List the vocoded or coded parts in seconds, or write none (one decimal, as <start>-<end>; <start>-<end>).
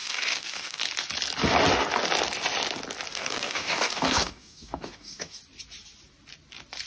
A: 0.0-0.8; 3.1-5.4